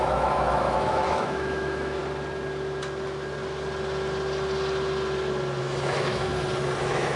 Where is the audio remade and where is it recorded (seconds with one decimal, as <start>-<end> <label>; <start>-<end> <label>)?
0.0-2.0 remade; 2.0-5.6 recorded; 5.6-6.3 remade; 6.3-6.8 recorded; 6.8-7.2 remade